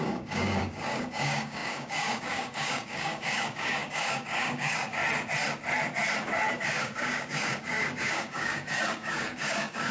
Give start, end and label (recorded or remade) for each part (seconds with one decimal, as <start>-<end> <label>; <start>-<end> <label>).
0.0-5.0 remade; 5.0-6.5 recorded; 6.5-9.9 remade